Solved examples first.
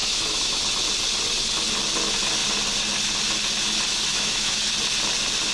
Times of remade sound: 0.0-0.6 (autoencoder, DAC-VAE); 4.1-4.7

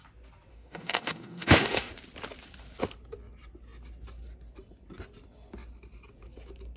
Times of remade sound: 0.5-1.9 (autoencoder, DAC-VAE)